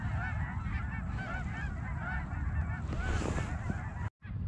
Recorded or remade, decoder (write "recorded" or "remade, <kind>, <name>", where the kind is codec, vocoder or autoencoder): recorded